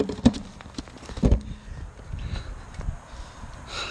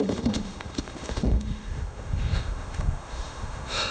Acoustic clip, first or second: first